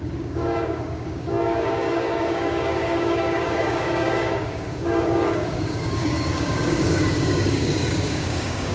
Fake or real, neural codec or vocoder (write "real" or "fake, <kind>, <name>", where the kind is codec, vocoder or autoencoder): fake, codec, DAC